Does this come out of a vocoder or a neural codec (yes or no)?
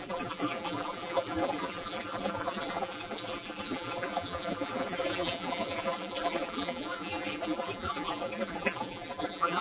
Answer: yes